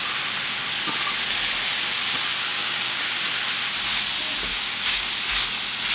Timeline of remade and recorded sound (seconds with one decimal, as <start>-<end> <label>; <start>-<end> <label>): 0.0-2.5 recorded; 2.5-3.0 remade; 3.0-4.5 recorded; 4.5-5.1 remade; 5.1-5.9 recorded